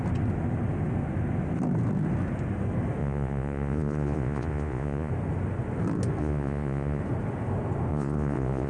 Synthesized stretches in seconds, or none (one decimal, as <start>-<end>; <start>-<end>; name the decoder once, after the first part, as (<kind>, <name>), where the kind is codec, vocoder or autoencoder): 3.0-5.1 (vocoder, Vocos); 6.2-7.0; 7.9-8.7